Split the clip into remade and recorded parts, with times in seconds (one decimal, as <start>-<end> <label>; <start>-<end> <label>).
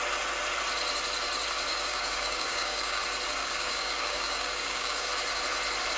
0.0-1.7 recorded; 1.7-3.0 remade; 3.0-3.4 recorded; 3.4-5.1 remade; 5.1-6.0 recorded